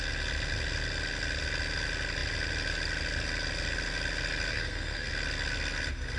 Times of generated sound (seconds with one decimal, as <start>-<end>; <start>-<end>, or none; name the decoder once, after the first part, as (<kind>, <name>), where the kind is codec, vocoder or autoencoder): 4.5-5.1 (codec, SNAC)